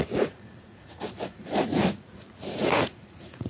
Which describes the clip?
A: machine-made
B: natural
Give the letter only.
A